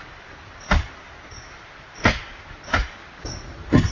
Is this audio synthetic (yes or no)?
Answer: no